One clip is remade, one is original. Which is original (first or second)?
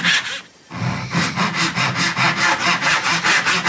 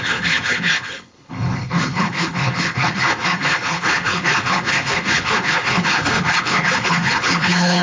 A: first